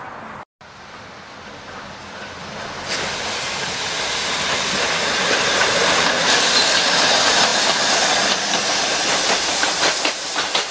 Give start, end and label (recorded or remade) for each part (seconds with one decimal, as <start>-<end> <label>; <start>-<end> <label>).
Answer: 0.0-10.7 recorded